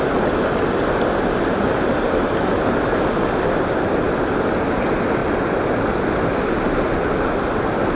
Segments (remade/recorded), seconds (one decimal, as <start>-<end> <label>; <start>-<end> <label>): 0.0-8.0 recorded